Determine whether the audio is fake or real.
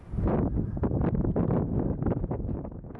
real